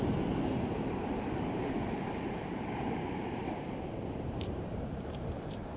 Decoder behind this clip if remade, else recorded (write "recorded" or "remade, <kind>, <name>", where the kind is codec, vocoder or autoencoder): remade, vocoder, BigVGAN v2